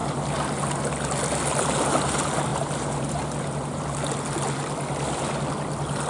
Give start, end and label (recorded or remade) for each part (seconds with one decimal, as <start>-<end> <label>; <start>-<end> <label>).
0.0-6.1 recorded